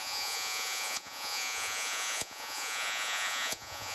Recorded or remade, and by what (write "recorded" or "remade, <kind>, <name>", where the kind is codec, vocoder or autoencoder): remade, vocoder, Vocos